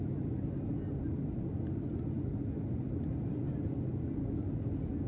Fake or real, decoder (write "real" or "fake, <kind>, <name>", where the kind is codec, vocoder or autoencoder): real